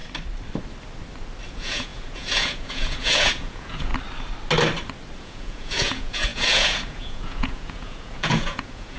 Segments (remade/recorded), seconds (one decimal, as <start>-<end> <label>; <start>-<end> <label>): 0.0-1.5 recorded; 1.5-3.9 remade; 3.9-5.2 recorded; 5.2-9.0 remade